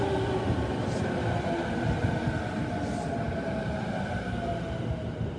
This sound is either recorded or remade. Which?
recorded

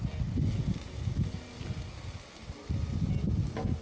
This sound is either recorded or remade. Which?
recorded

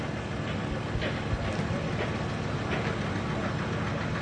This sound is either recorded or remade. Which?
recorded